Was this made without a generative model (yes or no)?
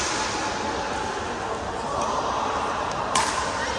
yes